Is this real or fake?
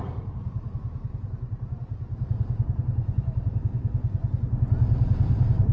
real